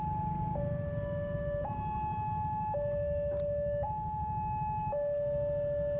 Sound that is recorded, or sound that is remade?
recorded